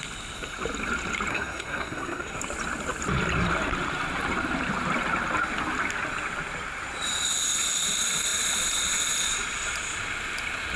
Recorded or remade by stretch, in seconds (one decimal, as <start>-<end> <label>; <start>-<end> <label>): 0.0-1.3 recorded; 1.3-2.4 remade; 2.4-10.8 recorded